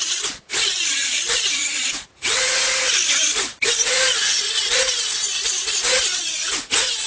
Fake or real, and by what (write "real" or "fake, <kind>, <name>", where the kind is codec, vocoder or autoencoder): fake, vocoder, Vocos